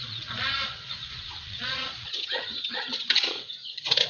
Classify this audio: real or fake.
fake